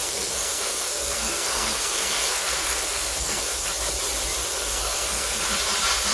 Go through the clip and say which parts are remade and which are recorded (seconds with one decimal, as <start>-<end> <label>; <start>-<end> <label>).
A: 0.0-3.7 remade; 3.7-4.5 recorded; 4.5-5.4 remade; 5.4-6.1 recorded